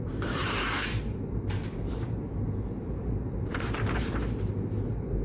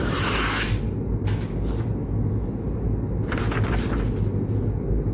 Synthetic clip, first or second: first